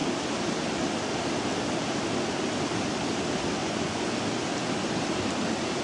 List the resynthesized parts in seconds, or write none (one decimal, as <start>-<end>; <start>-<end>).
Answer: 3.6-4.1